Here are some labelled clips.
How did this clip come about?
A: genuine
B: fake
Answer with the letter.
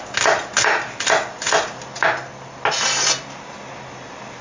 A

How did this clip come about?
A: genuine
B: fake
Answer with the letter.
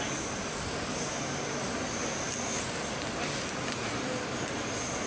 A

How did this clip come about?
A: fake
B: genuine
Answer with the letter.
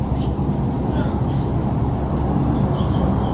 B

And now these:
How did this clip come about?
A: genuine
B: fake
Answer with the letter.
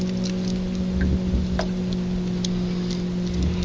A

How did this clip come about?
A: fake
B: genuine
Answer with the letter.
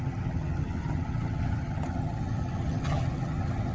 A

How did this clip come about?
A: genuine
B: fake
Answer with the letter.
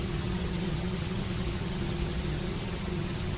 B